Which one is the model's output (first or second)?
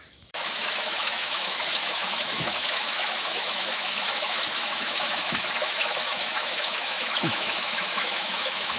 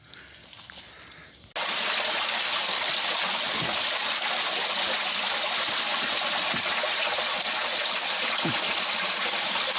first